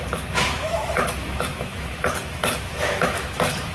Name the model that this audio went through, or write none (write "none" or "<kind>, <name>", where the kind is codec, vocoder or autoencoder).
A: autoencoder, DAC-VAE